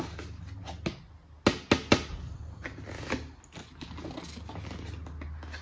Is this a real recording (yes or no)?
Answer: yes